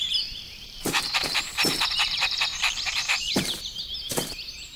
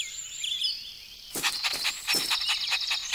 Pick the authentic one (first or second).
second